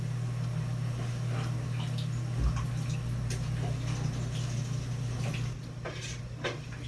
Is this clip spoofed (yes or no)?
no